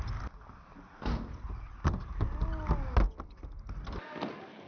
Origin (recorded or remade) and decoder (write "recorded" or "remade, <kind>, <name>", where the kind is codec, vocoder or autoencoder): recorded